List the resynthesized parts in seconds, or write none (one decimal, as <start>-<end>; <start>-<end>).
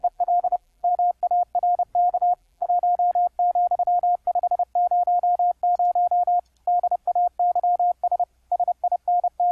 0.0-0.9; 2.0-2.7